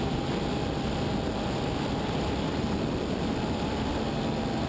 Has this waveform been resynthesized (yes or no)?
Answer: no